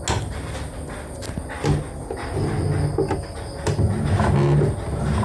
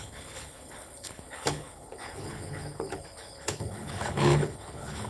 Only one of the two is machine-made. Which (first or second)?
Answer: second